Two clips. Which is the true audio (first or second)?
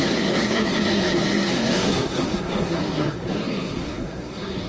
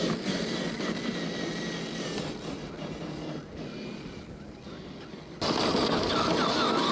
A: second